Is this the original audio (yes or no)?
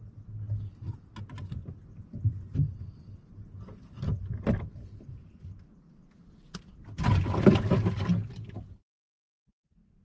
yes